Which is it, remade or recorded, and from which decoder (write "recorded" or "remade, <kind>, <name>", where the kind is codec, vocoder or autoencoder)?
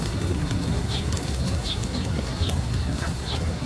remade, codec, SNAC